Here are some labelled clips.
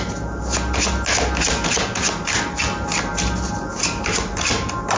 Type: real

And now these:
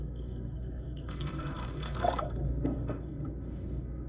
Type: fake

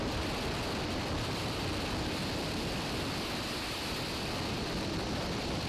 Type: real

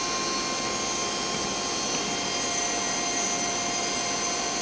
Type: real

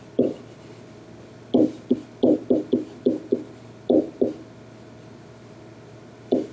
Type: real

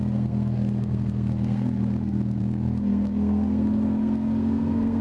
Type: fake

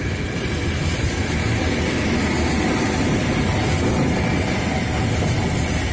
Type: real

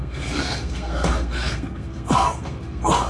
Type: fake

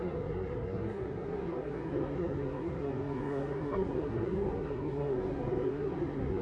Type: fake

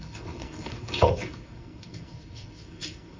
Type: fake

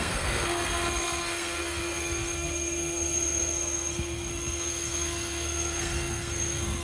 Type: fake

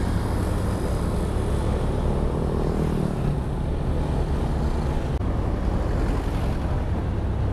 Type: real